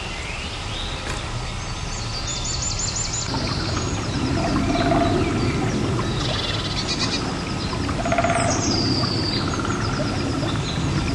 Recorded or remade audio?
recorded